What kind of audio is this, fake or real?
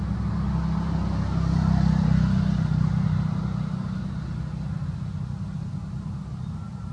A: real